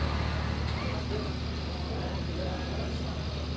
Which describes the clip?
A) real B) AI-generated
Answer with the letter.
A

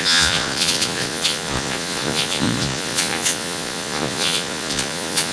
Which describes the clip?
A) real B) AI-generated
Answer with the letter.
B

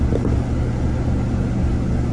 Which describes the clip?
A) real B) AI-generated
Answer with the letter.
A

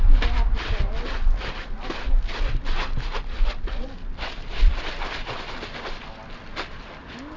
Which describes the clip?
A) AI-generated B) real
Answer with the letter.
B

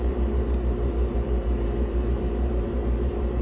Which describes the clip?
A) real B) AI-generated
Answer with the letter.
B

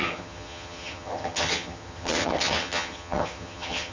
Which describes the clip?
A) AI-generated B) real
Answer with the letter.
A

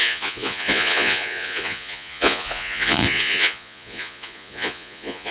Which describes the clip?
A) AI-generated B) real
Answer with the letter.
A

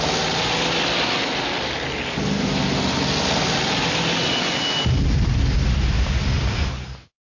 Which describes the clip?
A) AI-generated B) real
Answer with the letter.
B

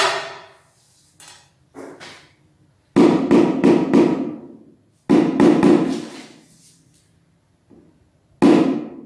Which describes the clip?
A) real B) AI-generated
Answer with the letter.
A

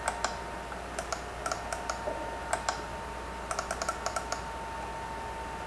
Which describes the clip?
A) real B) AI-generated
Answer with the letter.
A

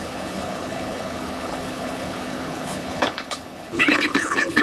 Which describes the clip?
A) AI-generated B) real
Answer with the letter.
A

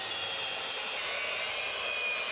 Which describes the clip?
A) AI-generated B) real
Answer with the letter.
B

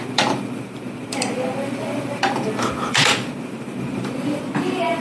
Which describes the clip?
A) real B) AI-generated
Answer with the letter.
B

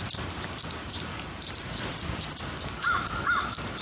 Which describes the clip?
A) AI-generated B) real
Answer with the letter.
B